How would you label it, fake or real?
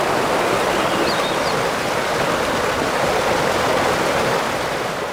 real